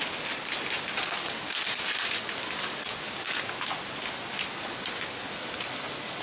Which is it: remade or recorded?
recorded